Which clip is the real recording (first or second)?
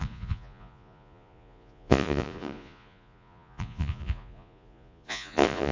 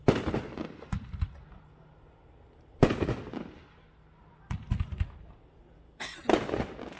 second